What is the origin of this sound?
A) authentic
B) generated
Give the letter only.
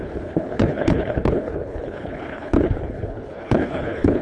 B